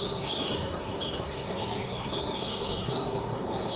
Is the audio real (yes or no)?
no